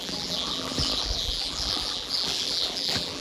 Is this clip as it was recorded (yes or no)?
no